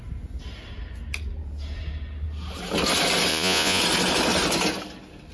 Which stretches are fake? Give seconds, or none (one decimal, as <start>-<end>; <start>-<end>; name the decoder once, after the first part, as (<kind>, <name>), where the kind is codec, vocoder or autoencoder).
3.3-3.8 (vocoder, Vocos)